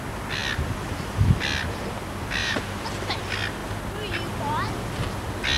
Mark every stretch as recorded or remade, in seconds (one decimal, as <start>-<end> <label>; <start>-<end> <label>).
0.0-2.4 recorded; 2.4-3.2 remade; 3.2-5.6 recorded